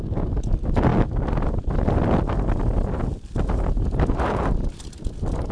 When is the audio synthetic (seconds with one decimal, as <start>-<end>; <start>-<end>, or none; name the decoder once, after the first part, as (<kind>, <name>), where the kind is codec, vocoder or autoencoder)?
none